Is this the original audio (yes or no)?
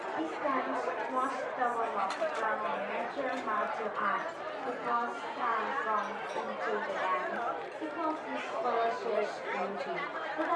yes